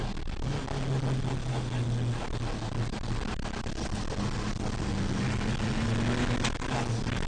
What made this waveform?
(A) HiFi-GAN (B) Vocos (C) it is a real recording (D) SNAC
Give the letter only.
C